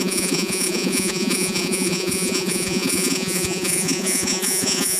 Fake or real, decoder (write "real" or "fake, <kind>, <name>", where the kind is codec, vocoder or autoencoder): fake, vocoder, Vocos